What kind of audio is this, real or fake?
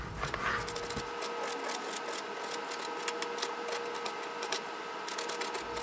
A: real